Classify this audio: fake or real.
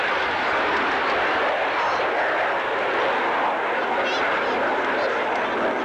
real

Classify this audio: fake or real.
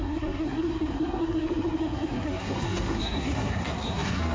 fake